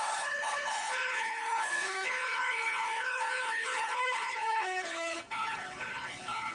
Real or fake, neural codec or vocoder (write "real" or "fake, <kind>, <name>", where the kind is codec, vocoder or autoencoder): fake, codec, HILCodec